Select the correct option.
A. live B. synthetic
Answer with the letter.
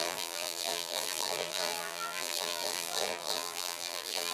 B